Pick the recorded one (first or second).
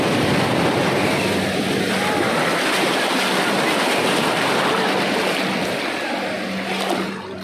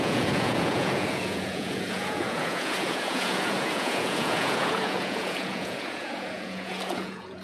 first